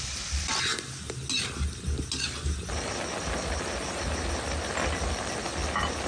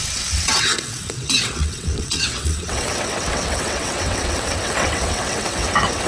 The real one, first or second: first